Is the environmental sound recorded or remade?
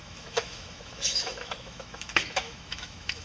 remade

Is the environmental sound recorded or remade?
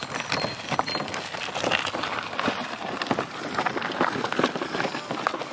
recorded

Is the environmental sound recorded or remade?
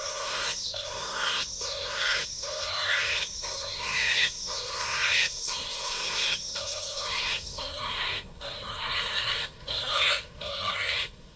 remade